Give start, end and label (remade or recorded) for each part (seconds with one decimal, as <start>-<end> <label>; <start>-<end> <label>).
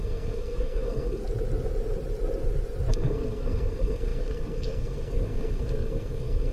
0.0-1.2 remade; 1.2-2.9 recorded; 2.9-6.5 remade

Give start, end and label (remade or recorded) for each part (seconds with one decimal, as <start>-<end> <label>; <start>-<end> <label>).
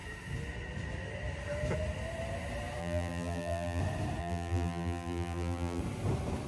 0.0-2.8 recorded; 2.8-3.8 remade; 3.8-4.2 recorded; 4.2-5.8 remade; 5.8-6.5 recorded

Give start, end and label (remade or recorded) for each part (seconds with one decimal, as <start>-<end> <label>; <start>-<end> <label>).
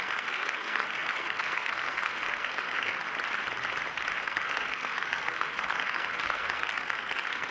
0.0-3.0 remade; 3.0-4.2 recorded; 4.2-7.5 remade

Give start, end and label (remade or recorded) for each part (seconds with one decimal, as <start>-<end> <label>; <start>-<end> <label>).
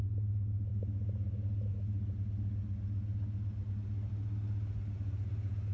0.0-5.7 recorded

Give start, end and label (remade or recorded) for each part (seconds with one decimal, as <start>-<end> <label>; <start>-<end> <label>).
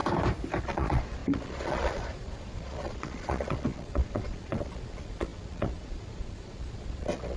0.0-0.6 recorded; 0.6-7.4 remade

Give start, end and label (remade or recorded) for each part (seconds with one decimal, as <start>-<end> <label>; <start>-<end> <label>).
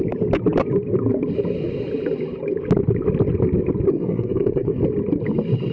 0.0-3.9 recorded; 3.9-4.8 remade; 4.8-5.7 recorded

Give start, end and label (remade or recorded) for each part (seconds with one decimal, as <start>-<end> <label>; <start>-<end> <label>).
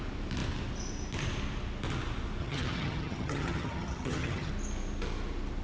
0.0-2.4 recorded; 2.4-4.5 remade; 4.5-5.6 recorded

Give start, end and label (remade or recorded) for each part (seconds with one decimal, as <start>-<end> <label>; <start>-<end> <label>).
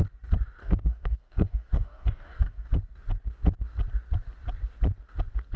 0.0-0.6 recorded; 0.6-2.7 remade; 2.7-5.6 recorded